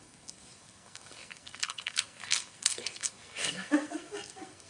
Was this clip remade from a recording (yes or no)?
yes